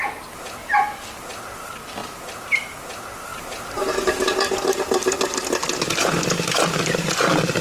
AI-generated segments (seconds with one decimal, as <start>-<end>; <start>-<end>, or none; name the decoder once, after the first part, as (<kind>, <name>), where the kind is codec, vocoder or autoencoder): 3.3-4.4 (vocoder, BigVGAN v2)